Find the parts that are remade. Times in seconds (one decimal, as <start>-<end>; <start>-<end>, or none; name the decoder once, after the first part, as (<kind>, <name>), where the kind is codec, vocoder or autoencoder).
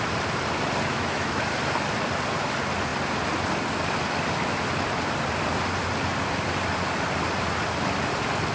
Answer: 0.9-1.5 (autoencoder, DAC-VAE)